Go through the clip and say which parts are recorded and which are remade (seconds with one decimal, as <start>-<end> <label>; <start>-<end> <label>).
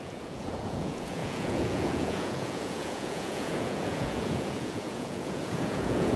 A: 0.0-6.2 remade